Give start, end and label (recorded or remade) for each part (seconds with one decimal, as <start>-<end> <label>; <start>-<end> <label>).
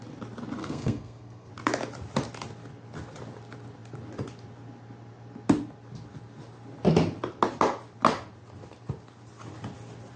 0.0-0.6 recorded; 0.6-1.5 remade; 1.5-10.2 recorded